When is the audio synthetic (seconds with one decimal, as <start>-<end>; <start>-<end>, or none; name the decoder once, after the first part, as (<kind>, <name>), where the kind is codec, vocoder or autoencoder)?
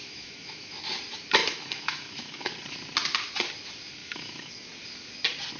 0.0-0.7 (autoencoder, DAC-VAE); 1.4-2.5; 4.0-4.5